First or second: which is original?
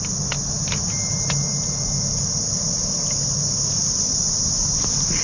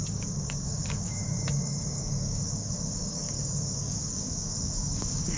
first